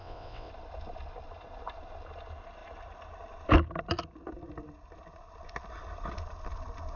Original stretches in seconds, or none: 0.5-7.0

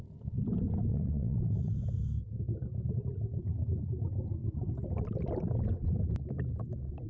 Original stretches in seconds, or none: 0.0-0.9; 1.8-7.1

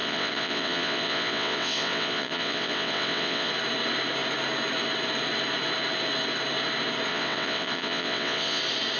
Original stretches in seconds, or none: 3.5-7.1; 8.6-9.0

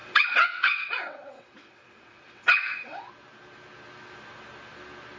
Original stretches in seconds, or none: 3.1-5.2

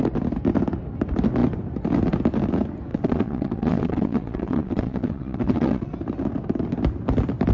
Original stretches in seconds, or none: 0.0-2.9; 5.9-7.5

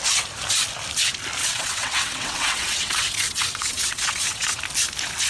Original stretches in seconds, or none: 0.0-1.4; 4.6-5.3

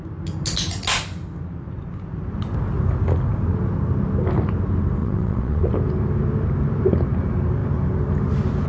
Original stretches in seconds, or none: 0.0-5.0; 5.7-8.7